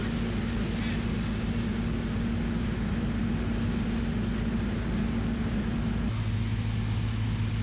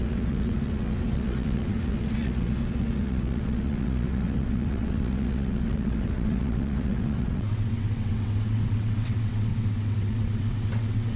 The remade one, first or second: second